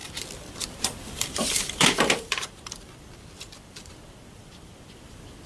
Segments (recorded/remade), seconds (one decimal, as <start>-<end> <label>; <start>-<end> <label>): 0.0-5.5 remade